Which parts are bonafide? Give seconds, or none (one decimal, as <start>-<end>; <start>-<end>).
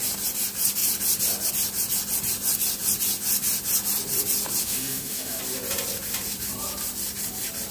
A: 0.0-4.6; 5.4-7.7